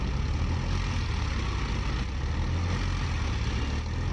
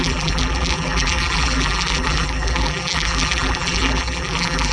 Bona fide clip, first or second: first